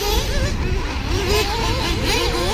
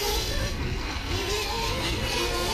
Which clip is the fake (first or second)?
second